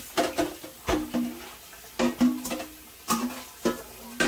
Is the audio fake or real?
real